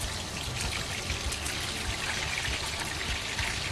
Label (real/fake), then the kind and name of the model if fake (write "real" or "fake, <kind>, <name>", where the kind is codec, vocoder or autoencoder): real